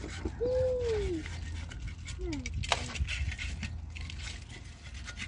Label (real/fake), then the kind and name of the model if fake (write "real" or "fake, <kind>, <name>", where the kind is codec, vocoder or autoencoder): real